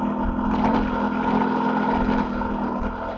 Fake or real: real